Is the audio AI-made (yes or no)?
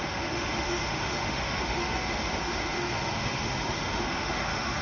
yes